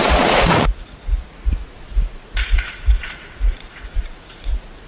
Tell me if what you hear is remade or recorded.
remade